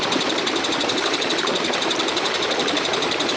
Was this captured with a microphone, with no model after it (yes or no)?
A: no